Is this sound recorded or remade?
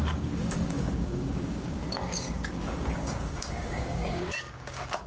remade